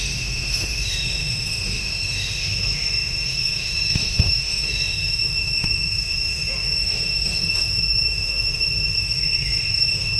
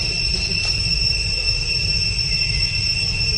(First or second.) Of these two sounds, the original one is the second